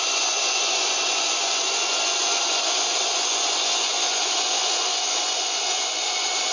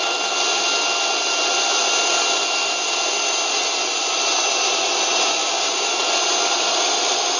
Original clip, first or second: second